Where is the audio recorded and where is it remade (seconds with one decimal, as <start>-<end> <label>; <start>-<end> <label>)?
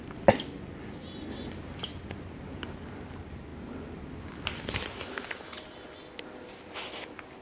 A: 0.0-7.4 recorded